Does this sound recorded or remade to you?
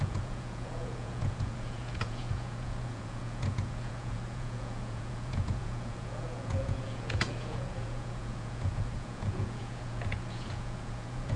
remade